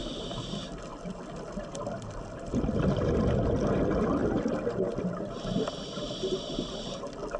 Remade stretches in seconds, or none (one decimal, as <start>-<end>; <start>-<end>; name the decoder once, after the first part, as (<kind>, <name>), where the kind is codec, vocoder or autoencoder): none